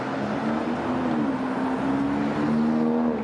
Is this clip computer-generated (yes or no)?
no